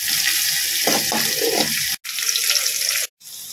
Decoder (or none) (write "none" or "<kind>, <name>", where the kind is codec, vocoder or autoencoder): none